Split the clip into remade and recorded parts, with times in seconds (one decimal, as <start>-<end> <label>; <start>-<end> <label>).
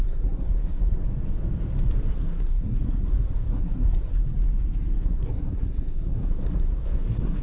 0.0-1.0 remade; 1.0-2.1 recorded; 2.1-4.1 remade; 4.1-5.0 recorded; 5.0-7.4 remade